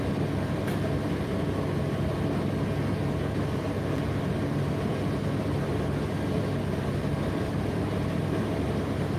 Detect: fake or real real